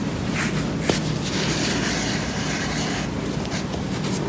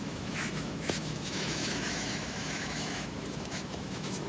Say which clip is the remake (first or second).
second